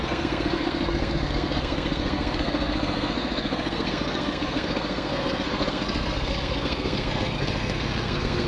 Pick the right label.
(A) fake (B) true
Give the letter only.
A